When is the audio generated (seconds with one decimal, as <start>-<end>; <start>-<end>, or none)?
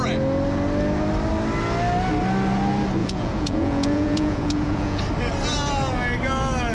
3.0-5.0